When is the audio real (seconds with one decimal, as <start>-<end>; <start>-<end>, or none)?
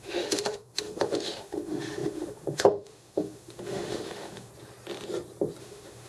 4.5-5.6